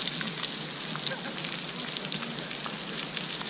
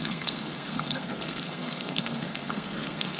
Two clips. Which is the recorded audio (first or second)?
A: first